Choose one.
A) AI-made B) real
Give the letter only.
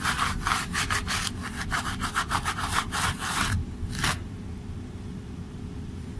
B